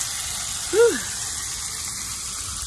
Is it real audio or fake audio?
real